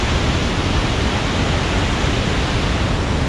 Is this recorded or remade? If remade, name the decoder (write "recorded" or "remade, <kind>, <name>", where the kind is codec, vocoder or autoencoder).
recorded